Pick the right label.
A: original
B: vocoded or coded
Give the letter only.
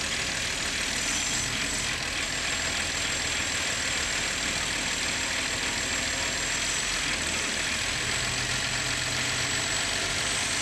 A